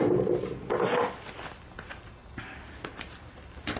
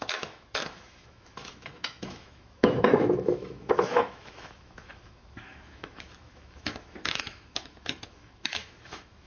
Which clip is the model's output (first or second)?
second